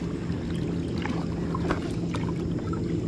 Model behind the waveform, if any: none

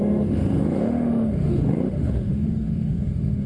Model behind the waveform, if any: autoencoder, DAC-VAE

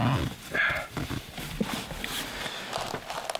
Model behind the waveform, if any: none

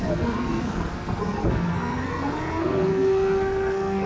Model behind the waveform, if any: codec, SNAC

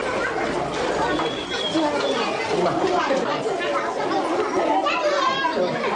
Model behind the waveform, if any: none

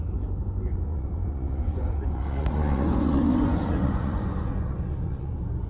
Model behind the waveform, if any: vocoder, Vocos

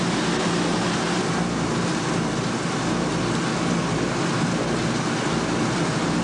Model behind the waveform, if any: none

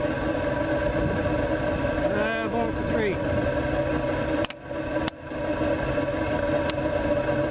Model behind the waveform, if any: none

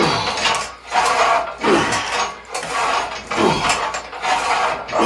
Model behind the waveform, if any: none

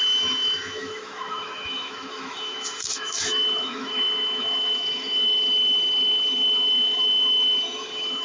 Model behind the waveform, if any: autoencoder, DAC-VAE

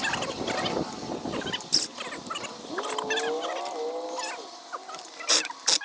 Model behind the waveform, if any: none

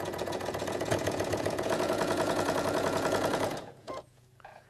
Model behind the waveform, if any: vocoder, Vocos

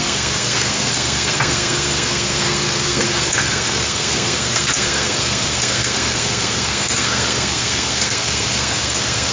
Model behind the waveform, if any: codec, SNAC